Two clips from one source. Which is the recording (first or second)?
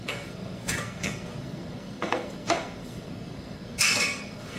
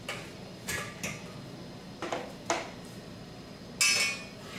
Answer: second